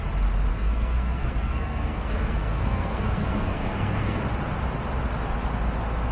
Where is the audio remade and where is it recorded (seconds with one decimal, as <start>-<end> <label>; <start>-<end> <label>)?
0.0-0.5 recorded; 0.5-4.2 remade; 4.2-6.1 recorded